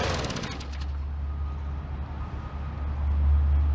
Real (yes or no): yes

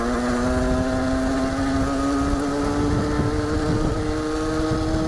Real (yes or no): yes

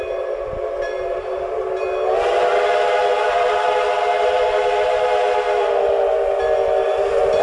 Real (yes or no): yes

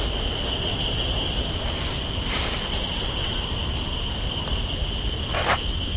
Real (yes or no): yes